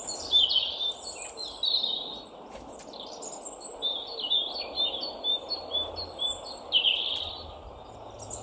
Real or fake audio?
real